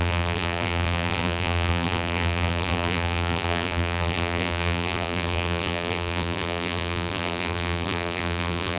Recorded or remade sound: remade